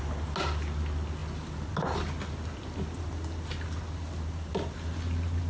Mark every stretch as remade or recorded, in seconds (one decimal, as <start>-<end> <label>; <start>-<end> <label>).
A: 0.0-5.5 recorded